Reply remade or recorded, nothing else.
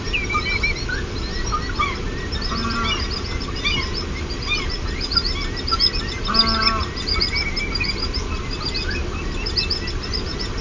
recorded